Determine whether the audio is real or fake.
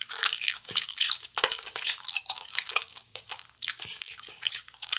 fake